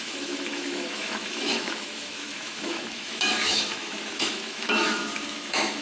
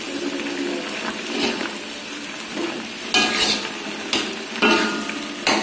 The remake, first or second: first